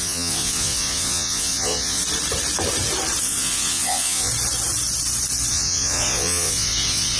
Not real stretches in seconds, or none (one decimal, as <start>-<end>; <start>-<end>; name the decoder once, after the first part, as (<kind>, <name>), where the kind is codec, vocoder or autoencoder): 0.0-2.0 (vocoder, Vocos); 3.2-4.3; 5.5-7.2